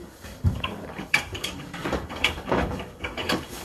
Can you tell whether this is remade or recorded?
remade